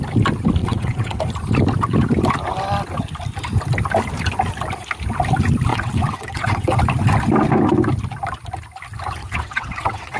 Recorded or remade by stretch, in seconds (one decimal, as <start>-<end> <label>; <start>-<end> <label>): 0.0-0.6 recorded; 0.6-1.2 remade; 1.2-5.7 recorded; 5.7-6.8 remade; 6.8-9.2 recorded; 9.2-10.2 remade